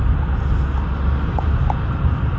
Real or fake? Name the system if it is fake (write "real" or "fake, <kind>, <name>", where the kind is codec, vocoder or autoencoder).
real